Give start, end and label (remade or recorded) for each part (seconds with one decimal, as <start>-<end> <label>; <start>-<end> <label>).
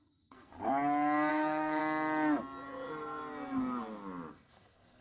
0.0-0.5 remade; 0.5-1.3 recorded; 1.3-1.8 remade; 1.8-4.3 recorded; 4.3-5.0 remade